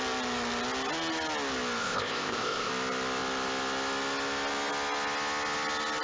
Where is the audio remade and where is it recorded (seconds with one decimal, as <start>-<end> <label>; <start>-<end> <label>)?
0.0-1.8 recorded; 1.8-2.7 remade; 2.7-6.0 recorded